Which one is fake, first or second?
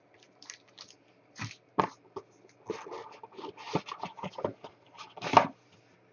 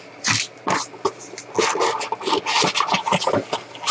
first